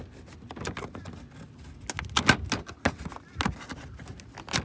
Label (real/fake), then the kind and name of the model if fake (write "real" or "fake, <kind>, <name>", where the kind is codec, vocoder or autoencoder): real